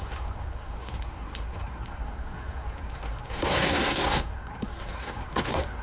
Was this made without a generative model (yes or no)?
no